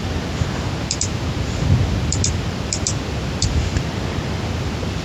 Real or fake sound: real